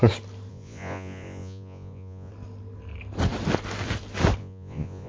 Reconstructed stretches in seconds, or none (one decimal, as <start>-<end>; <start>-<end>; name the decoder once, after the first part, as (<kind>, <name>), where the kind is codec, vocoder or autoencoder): 0.5-2.3 (vocoder, Vocos); 4.4-5.1